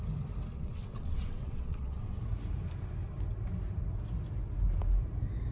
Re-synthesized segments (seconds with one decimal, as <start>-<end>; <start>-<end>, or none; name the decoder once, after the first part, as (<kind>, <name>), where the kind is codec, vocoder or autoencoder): 0.5-2.2 (vocoder, WaveNeXt)